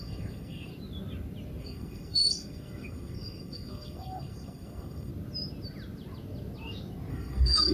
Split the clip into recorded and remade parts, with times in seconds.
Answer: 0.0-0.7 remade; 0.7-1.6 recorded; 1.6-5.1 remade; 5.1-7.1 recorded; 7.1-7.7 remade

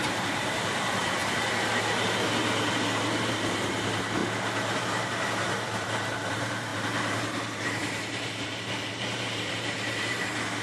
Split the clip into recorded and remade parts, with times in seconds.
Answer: 0.0-1.2 remade; 1.2-2.7 recorded; 2.7-4.2 remade; 4.2-4.8 recorded; 4.8-10.6 remade

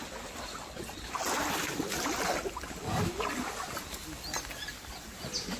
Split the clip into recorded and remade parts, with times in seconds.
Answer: 0.0-4.7 recorded; 4.7-5.6 remade

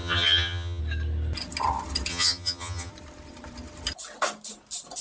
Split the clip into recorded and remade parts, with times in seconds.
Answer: 0.0-0.8 remade; 0.8-2.1 recorded; 2.1-2.9 remade; 2.9-5.0 recorded

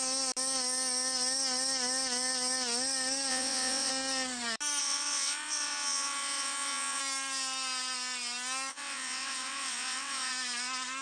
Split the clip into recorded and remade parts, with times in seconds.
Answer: 0.0-3.3 recorded; 3.3-3.9 remade; 3.9-4.8 recorded; 4.8-7.0 remade; 7.0-8.7 recorded; 8.7-10.3 remade; 10.3-11.0 recorded

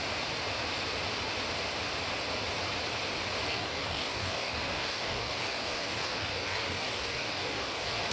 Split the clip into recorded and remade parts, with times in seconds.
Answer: 0.0-3.5 recorded; 3.5-8.1 remade

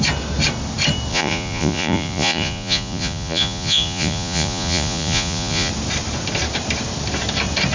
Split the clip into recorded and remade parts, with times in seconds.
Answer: 0.0-1.1 recorded; 1.1-5.7 remade; 5.7-7.7 recorded